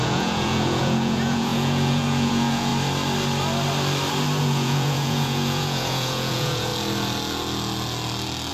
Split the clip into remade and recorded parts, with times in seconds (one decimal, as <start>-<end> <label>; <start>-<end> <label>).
0.0-2.7 remade; 2.7-4.4 recorded; 4.4-6.7 remade; 6.7-8.5 recorded